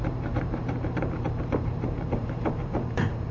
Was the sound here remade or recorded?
remade